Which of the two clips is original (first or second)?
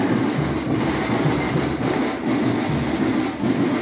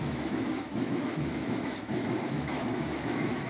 first